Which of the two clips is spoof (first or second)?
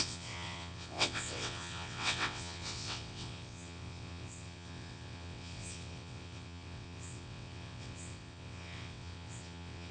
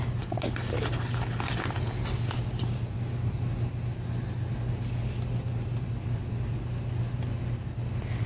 first